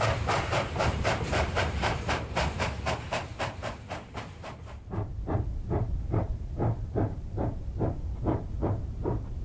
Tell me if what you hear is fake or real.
fake